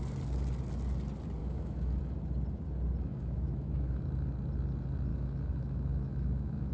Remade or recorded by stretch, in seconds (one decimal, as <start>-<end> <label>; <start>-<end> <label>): 0.0-1.4 recorded; 1.4-2.0 remade; 2.0-3.1 recorded; 3.1-4.0 remade; 4.0-5.1 recorded; 5.1-6.7 remade